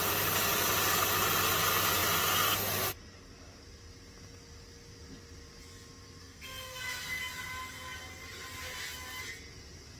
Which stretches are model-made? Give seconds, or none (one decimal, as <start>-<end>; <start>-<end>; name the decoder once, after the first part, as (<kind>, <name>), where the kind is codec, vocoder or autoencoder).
6.2-7.2 (codec, SNAC)